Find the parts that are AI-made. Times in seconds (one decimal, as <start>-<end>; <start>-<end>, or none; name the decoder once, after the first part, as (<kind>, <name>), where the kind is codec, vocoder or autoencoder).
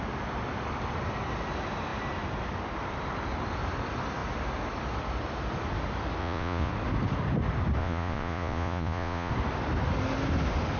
6.2-6.7 (vocoder, Vocos); 7.8-9.3